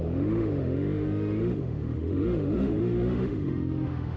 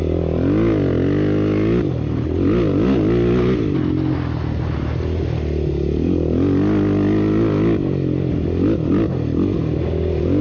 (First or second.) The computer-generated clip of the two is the first